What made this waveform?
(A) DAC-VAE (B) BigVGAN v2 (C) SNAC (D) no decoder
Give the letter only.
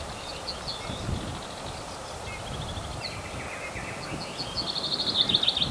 D